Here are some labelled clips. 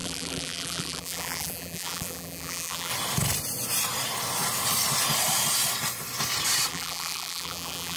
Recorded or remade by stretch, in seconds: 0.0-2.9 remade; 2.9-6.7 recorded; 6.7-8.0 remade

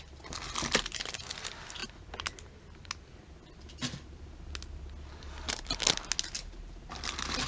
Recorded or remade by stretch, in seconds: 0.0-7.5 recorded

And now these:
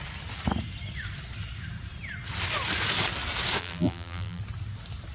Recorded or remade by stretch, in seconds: 0.0-3.6 recorded; 3.6-4.4 remade; 4.4-5.1 recorded

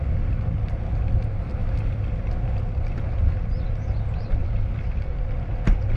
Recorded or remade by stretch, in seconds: 0.0-1.6 recorded; 1.6-3.6 remade; 3.6-4.4 recorded; 4.4-6.0 remade

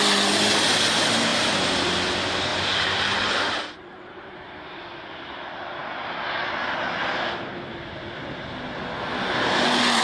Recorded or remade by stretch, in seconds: 0.0-1.3 recorded; 1.3-1.8 remade; 1.8-2.5 recorded; 2.5-4.2 remade; 4.2-10.0 recorded